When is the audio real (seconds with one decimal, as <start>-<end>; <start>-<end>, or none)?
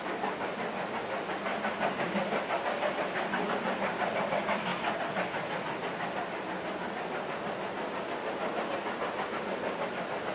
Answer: 0.0-10.3